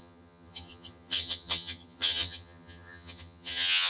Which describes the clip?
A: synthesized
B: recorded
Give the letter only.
A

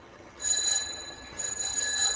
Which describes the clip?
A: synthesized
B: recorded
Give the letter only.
A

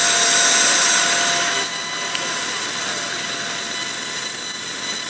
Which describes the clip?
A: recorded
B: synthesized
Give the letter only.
A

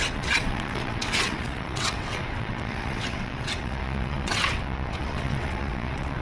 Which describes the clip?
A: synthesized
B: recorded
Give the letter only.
A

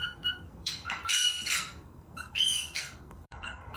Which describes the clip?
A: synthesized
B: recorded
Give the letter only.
A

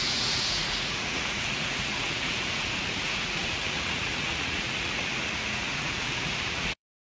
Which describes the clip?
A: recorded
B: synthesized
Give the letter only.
B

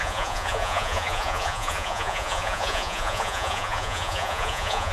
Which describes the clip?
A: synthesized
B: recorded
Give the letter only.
A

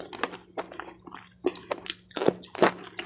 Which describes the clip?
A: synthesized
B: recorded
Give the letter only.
B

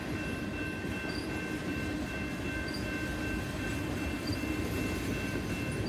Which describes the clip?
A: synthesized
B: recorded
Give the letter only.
B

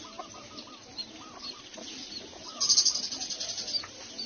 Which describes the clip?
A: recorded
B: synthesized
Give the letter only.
A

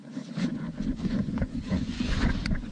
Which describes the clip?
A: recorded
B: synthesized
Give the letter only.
B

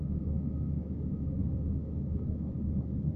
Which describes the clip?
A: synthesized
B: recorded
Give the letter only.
A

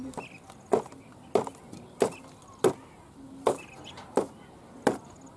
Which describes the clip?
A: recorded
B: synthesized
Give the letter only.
A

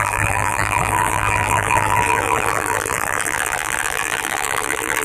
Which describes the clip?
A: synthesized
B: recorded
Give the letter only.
A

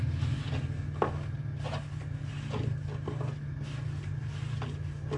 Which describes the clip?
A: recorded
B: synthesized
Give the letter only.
A